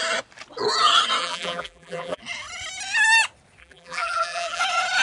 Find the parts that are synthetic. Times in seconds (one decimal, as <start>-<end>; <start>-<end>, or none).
1.2-2.2; 3.6-4.6